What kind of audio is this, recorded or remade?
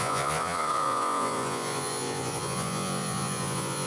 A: remade